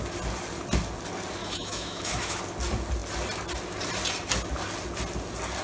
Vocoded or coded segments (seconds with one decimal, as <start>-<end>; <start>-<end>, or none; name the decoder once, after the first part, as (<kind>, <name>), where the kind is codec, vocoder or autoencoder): 1.4-2.4 (autoencoder, DAC-VAE)